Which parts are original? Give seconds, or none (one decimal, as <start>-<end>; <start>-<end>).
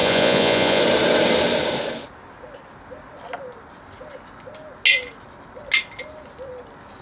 0.8-7.0